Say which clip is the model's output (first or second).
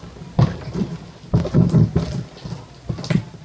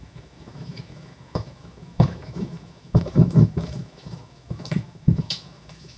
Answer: second